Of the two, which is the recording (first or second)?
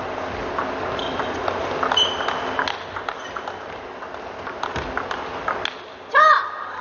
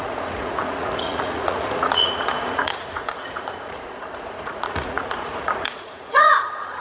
first